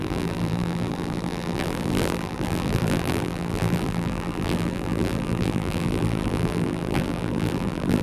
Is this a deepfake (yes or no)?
yes